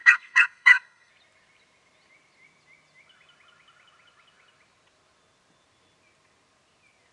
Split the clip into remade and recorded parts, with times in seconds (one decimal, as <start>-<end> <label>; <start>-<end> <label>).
0.0-1.1 remade; 1.1-7.1 recorded